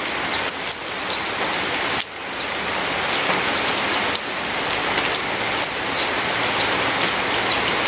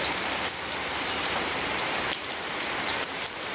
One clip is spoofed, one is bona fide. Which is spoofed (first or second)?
second